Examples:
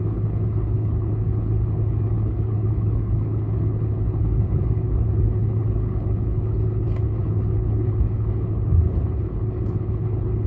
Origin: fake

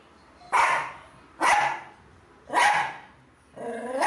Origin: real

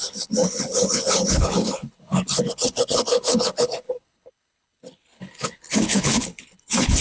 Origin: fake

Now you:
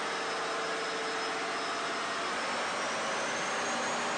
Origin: real